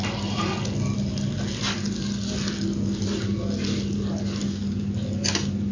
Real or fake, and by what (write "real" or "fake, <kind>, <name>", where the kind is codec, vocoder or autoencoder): real